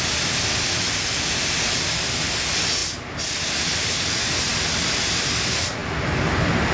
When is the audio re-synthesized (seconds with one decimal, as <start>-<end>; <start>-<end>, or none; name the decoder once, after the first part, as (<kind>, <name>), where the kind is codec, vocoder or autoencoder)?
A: none